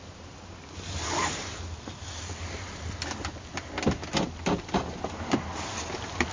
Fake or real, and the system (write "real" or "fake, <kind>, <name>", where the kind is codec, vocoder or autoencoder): real